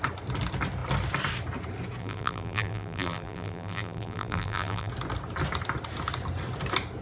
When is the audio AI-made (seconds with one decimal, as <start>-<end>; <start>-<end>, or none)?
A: 2.0-4.9